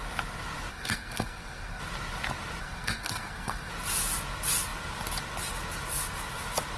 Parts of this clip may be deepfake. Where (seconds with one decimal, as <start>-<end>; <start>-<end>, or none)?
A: 0.7-1.8; 2.6-3.7